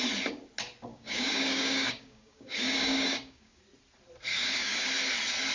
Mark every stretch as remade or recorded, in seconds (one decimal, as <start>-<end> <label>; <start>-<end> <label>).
0.0-0.9 recorded; 0.9-3.6 remade; 3.6-4.3 recorded; 4.3-4.9 remade; 4.9-5.5 recorded

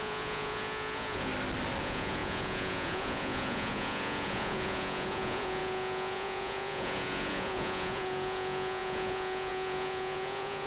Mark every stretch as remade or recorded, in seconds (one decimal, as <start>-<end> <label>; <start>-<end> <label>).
0.0-1.3 remade; 1.3-1.8 recorded; 1.8-10.7 remade